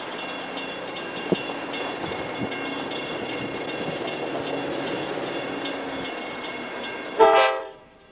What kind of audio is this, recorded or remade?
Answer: recorded